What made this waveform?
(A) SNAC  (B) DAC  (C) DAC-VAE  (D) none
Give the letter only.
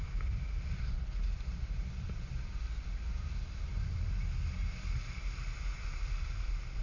D